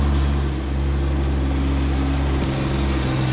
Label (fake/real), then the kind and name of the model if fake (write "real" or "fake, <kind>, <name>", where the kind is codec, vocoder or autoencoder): real